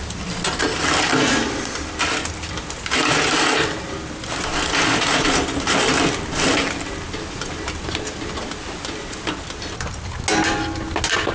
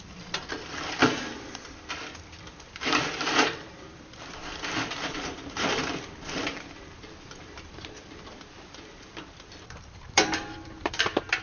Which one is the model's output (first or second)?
second